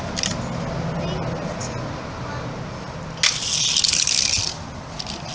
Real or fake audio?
real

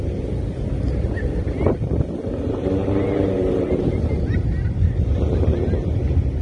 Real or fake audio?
real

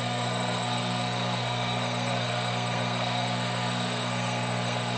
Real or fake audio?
fake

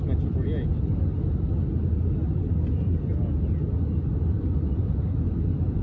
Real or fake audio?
real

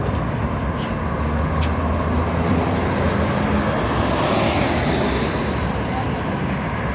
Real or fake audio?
real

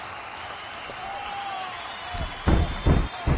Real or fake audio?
real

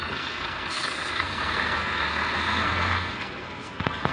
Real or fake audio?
fake